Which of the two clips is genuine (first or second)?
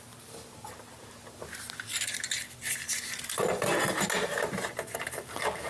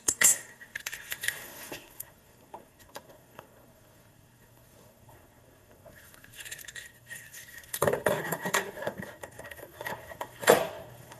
first